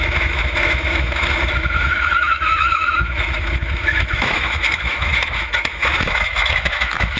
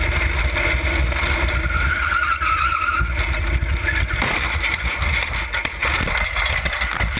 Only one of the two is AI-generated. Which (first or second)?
first